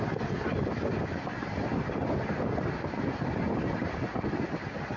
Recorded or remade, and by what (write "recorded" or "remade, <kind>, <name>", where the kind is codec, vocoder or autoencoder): recorded